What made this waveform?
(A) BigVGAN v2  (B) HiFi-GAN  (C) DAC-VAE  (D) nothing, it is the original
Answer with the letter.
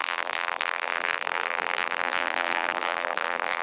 A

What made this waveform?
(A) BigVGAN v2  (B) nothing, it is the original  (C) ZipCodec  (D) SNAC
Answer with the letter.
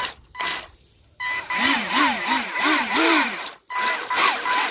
B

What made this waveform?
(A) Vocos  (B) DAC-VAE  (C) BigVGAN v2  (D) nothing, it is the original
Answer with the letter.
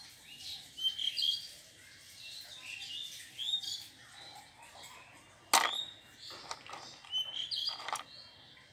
D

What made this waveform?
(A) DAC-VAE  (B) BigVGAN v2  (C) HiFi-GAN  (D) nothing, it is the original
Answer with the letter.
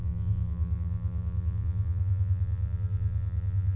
B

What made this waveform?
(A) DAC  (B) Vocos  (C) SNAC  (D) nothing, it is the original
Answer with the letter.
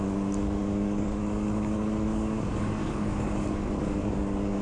A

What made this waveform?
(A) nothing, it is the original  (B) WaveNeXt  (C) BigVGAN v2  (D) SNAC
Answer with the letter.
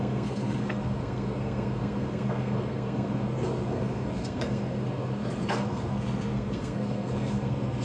D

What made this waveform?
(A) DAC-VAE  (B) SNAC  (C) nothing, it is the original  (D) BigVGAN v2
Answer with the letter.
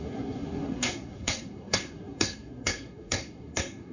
B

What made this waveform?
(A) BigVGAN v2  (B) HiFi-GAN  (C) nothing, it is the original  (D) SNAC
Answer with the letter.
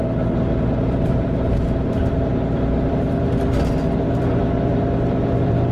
A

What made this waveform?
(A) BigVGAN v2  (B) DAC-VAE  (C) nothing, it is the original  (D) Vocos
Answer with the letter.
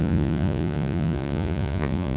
D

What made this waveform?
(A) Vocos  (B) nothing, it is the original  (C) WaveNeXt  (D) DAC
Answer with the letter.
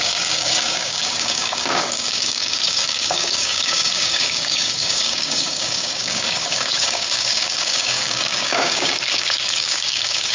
D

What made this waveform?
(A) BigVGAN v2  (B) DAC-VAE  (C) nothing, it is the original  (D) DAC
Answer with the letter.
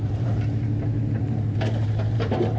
A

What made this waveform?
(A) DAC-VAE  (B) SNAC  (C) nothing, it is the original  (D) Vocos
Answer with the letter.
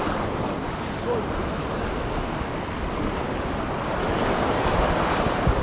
C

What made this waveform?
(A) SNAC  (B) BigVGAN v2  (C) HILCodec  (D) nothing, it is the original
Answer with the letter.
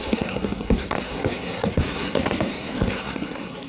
A